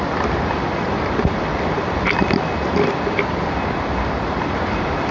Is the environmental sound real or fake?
real